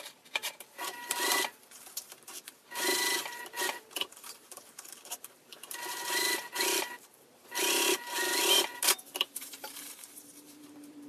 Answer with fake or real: fake